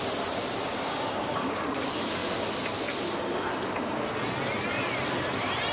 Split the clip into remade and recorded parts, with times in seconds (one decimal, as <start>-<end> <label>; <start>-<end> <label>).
0.0-0.6 recorded; 0.6-1.6 remade; 1.6-5.7 recorded